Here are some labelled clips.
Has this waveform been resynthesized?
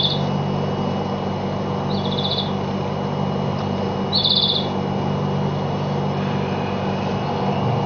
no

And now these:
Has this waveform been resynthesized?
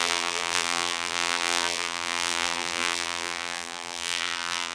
yes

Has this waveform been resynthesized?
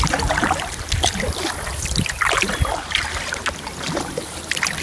no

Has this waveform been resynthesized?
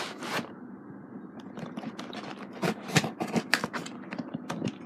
yes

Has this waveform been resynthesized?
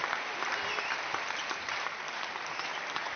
yes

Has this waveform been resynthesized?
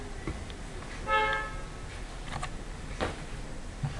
no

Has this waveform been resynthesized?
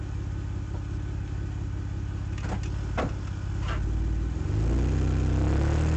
no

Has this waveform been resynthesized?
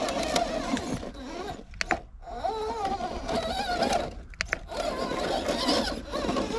no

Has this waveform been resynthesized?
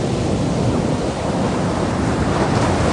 no